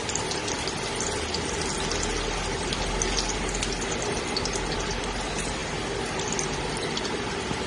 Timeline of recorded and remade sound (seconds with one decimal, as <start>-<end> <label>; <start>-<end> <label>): 0.0-7.7 recorded